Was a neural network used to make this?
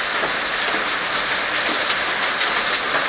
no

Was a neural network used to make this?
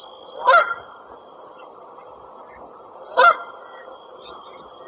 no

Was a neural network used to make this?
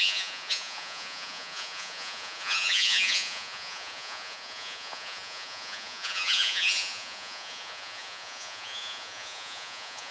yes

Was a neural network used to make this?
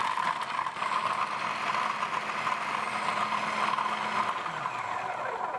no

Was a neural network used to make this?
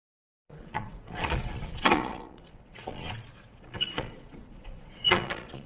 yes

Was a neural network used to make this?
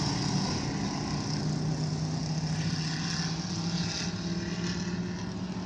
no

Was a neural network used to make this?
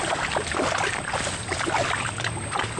no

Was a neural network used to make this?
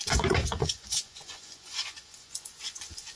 yes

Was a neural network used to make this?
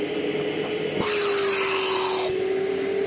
no